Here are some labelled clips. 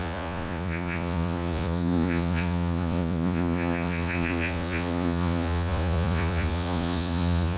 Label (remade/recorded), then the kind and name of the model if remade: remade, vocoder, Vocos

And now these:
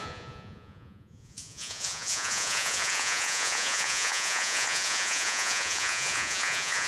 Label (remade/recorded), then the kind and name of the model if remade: remade, vocoder, Vocos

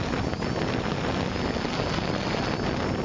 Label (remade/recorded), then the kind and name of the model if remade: recorded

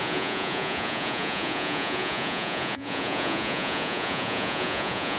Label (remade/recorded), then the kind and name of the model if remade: remade, vocoder, Vocos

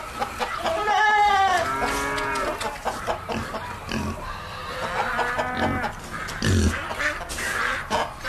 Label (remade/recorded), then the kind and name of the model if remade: recorded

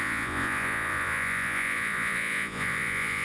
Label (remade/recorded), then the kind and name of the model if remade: remade, vocoder, Vocos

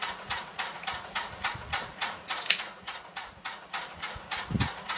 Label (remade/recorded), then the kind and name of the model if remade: remade, vocoder, Vocos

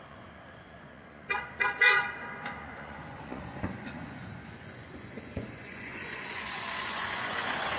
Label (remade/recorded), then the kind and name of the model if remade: remade, vocoder, Vocos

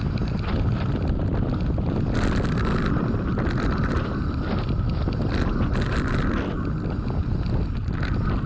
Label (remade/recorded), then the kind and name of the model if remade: recorded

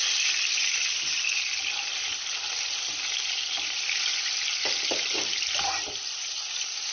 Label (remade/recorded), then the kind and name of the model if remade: recorded